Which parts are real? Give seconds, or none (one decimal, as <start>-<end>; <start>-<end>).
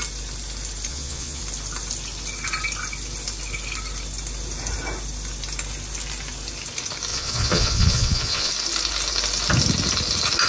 0.0-0.9; 1.4-7.1; 8.5-10.5